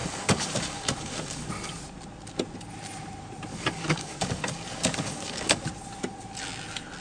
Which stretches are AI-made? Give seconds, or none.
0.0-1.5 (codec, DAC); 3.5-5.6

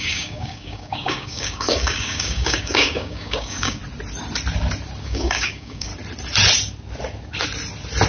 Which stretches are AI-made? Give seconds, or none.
0.0-3.8 (codec, DAC); 5.0-5.9

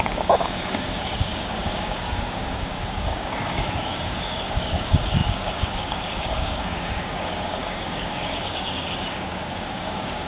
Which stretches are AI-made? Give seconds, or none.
0.0-10.3 (codec, DAC)